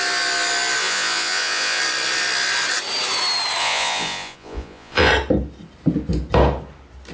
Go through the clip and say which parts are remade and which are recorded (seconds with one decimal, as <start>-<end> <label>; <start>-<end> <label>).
0.0-0.8 recorded; 0.8-1.8 remade; 1.8-3.6 recorded; 3.6-5.1 remade; 5.1-7.1 recorded